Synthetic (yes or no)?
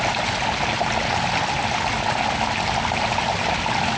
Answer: no